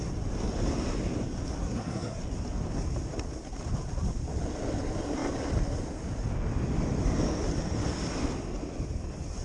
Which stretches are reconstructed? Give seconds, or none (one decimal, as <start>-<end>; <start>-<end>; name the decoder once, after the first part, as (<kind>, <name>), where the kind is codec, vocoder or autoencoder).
1.6-2.2 (codec, SNAC)